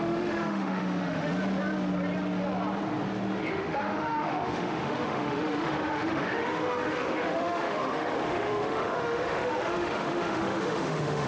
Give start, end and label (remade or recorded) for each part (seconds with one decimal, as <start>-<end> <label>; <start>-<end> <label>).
0.0-1.3 remade; 1.3-3.5 recorded; 3.5-11.3 remade